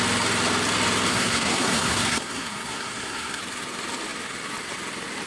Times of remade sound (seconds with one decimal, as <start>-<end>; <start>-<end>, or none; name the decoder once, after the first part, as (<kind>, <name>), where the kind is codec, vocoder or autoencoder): 1.1-3.4 (codec, SNAC)